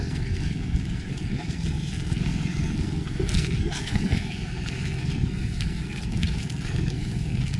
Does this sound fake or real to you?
fake